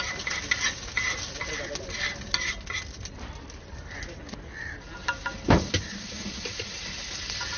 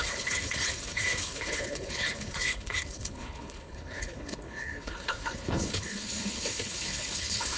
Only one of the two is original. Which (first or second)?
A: first